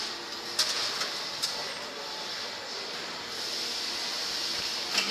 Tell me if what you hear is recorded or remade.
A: recorded